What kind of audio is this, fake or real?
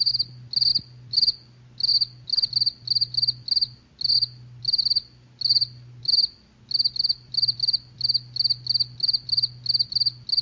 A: real